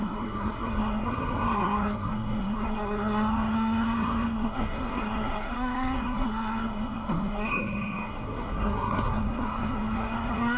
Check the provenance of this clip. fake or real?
fake